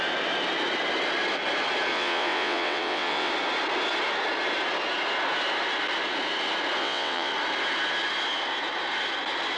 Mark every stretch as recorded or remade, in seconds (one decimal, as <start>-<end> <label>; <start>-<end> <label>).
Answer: 0.0-1.9 recorded; 1.9-3.3 remade; 3.3-6.8 recorded; 6.8-7.3 remade; 7.3-9.6 recorded